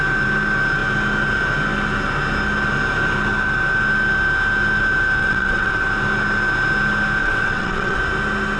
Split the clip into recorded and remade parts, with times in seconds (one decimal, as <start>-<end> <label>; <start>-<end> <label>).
0.0-5.2 recorded; 5.2-5.7 remade; 5.7-7.2 recorded; 7.2-8.0 remade; 8.0-8.6 recorded